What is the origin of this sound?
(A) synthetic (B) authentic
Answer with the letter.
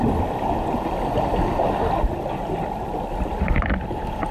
A